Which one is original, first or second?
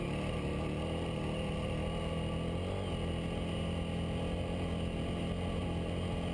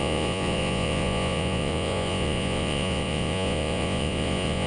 first